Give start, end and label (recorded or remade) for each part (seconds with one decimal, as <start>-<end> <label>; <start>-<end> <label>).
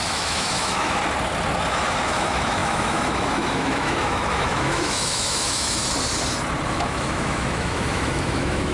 0.0-1.0 remade; 1.0-1.7 recorded; 1.7-5.8 remade; 5.8-6.7 recorded; 6.7-8.7 remade